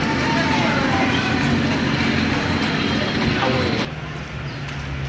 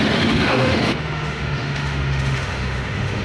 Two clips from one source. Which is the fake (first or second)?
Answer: second